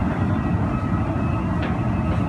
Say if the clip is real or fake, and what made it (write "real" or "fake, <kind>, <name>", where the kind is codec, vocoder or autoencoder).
real